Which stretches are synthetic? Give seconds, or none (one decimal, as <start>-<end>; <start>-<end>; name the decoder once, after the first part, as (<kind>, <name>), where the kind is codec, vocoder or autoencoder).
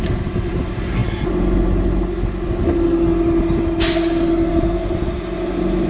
none